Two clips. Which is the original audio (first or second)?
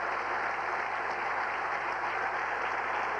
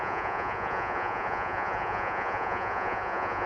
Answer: first